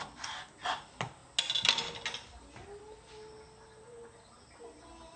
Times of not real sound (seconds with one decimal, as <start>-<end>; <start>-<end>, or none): none